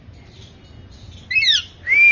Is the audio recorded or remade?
recorded